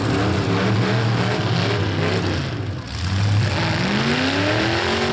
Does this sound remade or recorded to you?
recorded